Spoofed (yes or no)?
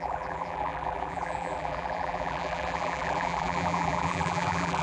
yes